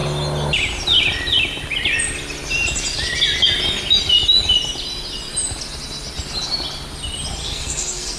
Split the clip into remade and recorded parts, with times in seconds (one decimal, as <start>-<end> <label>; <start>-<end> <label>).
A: 0.0-7.4 recorded; 7.4-8.2 remade

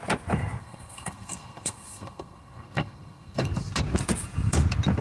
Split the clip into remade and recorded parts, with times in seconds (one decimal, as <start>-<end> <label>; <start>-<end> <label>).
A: 0.0-0.6 recorded; 0.6-3.5 remade; 3.5-5.0 recorded